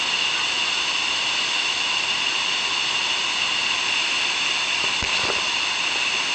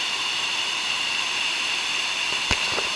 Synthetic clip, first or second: second